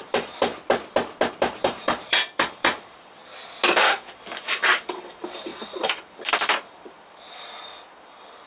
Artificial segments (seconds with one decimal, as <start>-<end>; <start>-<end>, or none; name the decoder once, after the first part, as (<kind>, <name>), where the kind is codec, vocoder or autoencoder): 0.0-0.5 (vocoder, BigVGAN v2); 1.3-3.2; 3.7-8.5